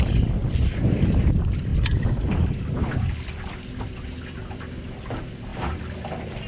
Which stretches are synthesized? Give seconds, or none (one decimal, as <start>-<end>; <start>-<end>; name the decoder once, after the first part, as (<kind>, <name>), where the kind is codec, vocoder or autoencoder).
none